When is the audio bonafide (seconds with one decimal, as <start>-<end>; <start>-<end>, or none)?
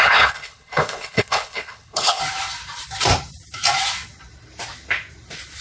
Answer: 2.2-5.6